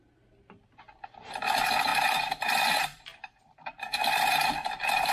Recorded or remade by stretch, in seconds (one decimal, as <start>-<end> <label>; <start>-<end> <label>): 0.0-1.9 recorded; 1.9-5.1 remade